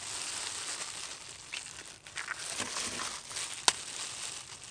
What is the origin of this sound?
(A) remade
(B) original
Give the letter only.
B